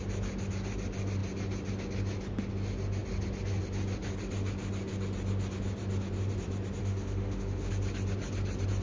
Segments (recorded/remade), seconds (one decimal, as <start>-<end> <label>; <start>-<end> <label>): 0.0-6.8 recorded; 6.8-7.7 remade; 7.7-8.8 recorded